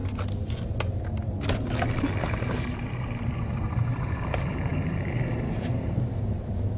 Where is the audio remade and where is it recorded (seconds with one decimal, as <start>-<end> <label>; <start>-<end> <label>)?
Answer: 0.0-2.2 recorded; 2.2-6.8 remade